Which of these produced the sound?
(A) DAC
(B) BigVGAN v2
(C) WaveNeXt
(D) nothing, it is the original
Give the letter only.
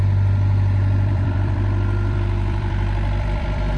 B